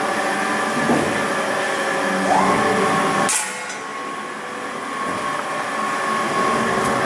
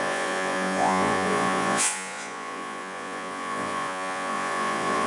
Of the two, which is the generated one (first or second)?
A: second